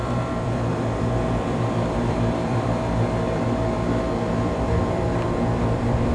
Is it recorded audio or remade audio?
remade